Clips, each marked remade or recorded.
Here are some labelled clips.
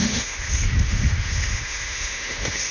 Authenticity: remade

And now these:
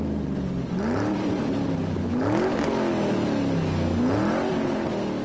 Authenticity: recorded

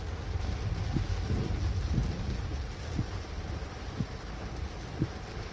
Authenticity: recorded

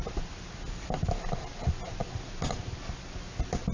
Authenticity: recorded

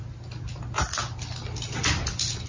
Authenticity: recorded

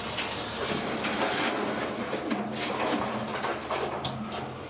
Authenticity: recorded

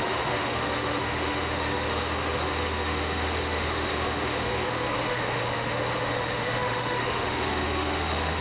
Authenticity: remade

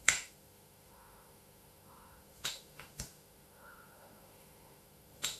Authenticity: remade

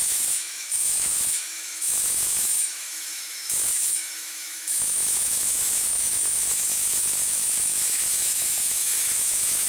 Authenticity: remade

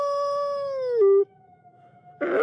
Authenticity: remade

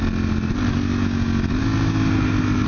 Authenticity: recorded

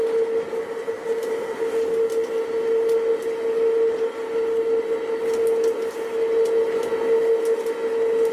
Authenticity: recorded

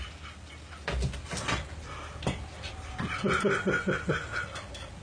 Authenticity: recorded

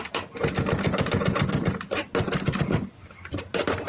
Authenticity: recorded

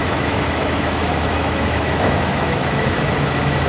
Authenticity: remade